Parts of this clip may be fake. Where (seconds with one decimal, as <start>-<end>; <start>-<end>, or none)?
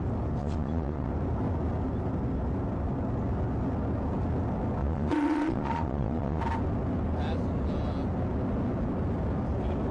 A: 0.4-1.1; 4.8-6.4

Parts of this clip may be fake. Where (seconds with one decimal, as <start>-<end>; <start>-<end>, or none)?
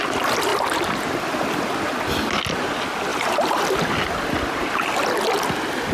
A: 3.1-3.6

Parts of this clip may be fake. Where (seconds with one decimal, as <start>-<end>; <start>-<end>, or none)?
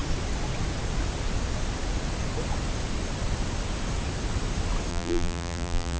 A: 4.9-6.0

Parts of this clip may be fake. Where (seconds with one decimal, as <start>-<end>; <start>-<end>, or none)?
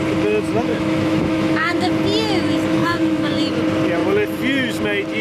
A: 0.7-1.9; 2.8-3.4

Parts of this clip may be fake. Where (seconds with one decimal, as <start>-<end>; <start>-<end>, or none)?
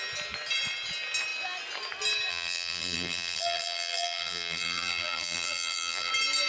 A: 2.3-6.1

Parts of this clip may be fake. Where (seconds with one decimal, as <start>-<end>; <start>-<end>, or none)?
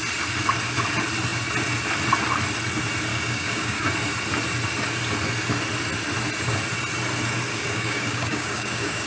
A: 3.1-3.9; 7.5-9.1